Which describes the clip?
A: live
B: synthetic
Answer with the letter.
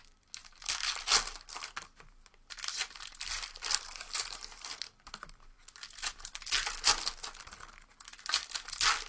A